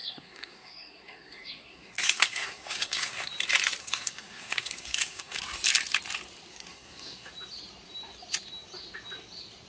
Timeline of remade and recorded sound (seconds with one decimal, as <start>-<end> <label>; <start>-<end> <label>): 0.0-3.3 remade; 3.3-3.8 recorded; 3.8-5.4 remade; 5.4-6.5 recorded; 6.5-7.3 remade; 7.3-9.7 recorded